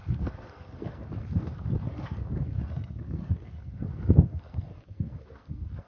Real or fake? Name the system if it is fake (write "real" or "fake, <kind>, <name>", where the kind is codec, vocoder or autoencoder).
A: fake, codec, SNAC